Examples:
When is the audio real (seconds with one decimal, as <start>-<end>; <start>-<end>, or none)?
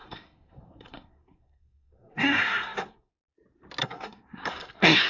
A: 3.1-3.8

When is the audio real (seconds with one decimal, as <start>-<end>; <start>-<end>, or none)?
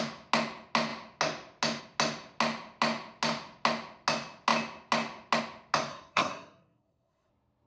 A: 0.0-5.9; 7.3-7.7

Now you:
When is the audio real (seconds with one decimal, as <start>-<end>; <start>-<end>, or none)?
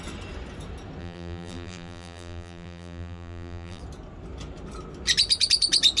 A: 0.0-1.0; 3.8-6.0